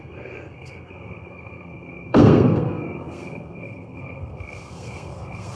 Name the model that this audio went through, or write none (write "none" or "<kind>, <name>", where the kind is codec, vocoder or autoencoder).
codec, SNAC